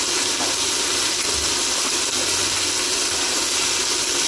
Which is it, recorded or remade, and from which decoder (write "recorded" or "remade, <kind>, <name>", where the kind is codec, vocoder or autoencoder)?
recorded